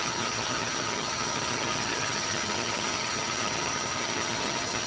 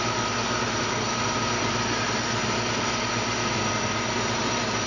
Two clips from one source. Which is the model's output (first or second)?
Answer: first